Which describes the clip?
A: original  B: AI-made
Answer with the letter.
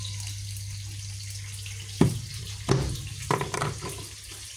A